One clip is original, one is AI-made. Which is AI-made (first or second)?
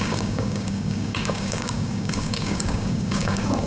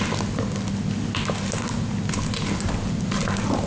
first